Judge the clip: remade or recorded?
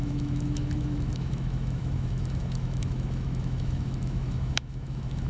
remade